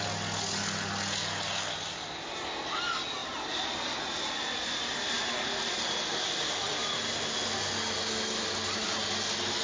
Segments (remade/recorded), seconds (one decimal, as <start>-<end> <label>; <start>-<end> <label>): 0.0-9.6 recorded